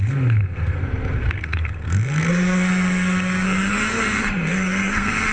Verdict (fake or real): fake